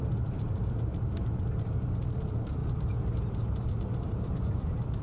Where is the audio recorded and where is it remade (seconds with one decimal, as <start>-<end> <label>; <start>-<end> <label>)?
0.0-0.9 remade; 0.9-2.2 recorded; 2.2-2.6 remade; 2.6-3.2 recorded; 3.2-5.0 remade